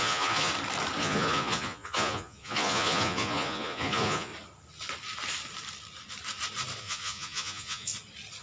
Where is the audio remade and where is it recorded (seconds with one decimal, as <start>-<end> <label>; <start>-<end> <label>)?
0.0-0.5 remade; 0.5-1.0 recorded; 1.0-4.3 remade; 4.3-6.8 recorded; 6.8-7.9 remade; 7.9-8.4 recorded